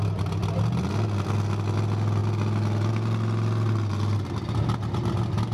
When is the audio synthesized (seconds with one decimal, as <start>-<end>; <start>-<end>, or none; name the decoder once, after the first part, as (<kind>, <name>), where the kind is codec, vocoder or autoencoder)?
none